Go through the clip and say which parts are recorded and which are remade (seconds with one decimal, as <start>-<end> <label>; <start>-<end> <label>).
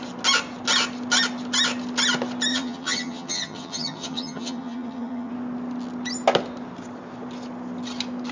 0.0-2.5 recorded; 2.5-5.3 remade; 5.3-8.3 recorded